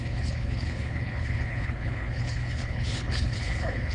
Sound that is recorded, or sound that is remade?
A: remade